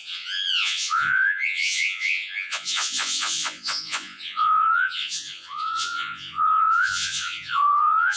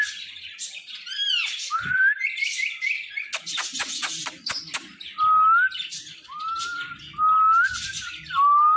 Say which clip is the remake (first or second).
first